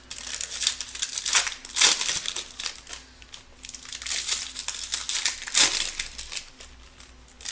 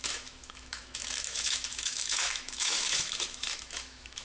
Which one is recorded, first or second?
first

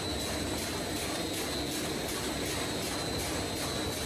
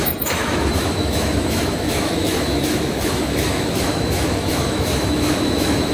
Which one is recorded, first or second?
first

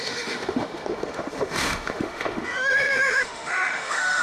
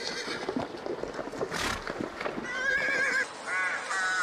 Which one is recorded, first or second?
second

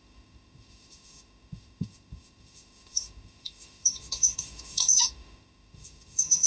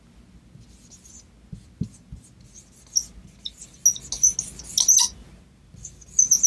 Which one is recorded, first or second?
second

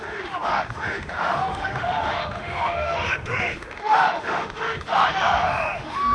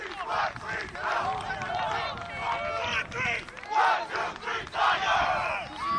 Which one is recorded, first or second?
second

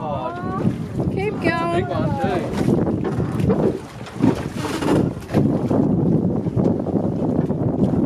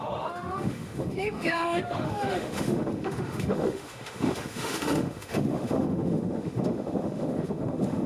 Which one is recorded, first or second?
first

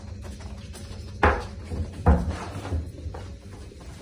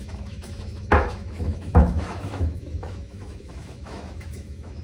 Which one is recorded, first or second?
first